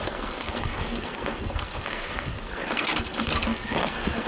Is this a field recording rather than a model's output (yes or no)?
no